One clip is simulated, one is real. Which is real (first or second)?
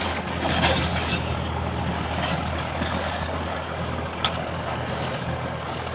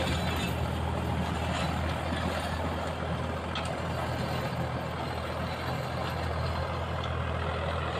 second